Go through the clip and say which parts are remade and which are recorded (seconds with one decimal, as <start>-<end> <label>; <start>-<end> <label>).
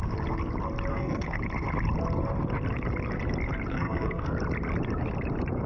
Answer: 0.0-0.9 recorded; 0.9-1.4 remade; 1.4-3.7 recorded; 3.7-4.3 remade; 4.3-5.7 recorded